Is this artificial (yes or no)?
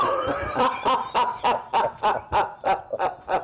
no